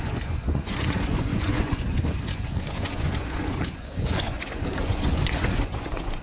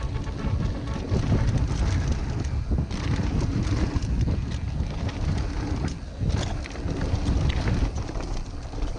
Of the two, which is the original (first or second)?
second